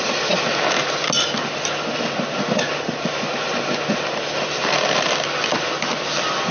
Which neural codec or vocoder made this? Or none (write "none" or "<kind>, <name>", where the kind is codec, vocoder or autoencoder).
none